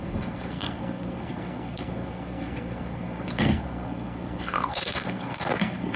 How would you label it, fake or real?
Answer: fake